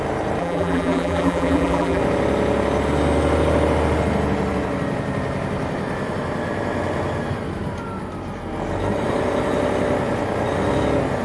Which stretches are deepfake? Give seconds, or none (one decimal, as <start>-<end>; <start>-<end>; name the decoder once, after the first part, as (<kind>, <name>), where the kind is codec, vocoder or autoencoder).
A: 0.4-2.0 (vocoder, BigVGAN v2)